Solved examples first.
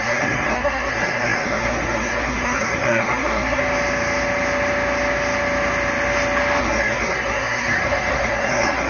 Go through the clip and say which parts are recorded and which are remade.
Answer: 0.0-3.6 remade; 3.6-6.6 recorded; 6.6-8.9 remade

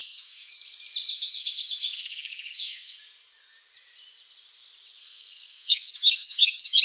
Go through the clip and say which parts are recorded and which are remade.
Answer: 0.0-0.5 remade; 0.5-1.1 recorded; 1.1-3.0 remade; 3.0-5.0 recorded; 5.0-6.8 remade

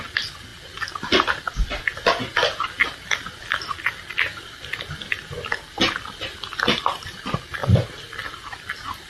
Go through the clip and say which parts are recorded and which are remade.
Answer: 0.0-9.1 recorded